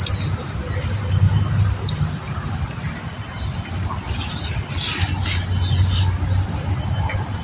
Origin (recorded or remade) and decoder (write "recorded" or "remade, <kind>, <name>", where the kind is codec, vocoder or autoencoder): recorded